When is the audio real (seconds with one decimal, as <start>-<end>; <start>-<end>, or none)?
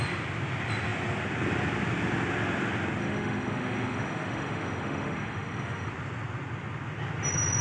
0.0-3.0; 5.9-7.6